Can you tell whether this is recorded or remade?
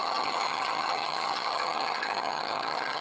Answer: remade